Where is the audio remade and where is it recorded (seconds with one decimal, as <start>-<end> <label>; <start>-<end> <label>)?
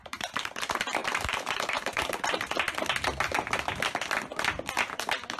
0.0-0.5 remade; 0.5-1.0 recorded; 1.0-2.5 remade; 2.5-5.4 recorded